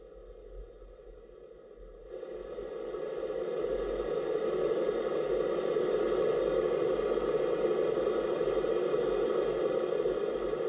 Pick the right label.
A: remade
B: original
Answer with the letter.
B